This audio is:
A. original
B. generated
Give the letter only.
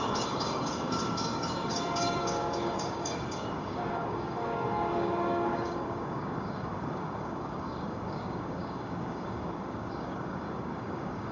B